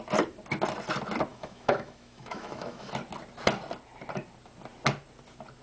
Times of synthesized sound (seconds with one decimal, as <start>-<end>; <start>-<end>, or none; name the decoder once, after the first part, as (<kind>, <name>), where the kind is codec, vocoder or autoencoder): 1.3-2.9 (autoencoder, DAC-VAE)